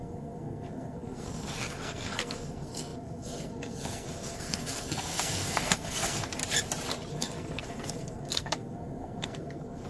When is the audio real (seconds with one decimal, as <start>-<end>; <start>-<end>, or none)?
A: 6.4-7.1